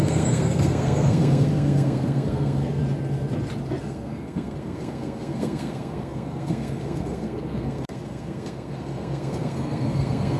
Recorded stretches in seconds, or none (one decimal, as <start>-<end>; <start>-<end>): 2.8-3.8